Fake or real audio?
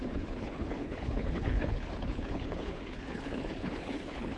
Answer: fake